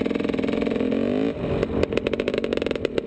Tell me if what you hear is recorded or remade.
recorded